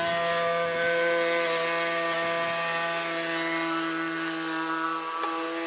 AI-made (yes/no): no